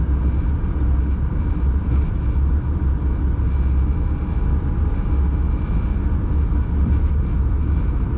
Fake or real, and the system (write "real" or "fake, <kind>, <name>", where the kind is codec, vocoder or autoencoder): real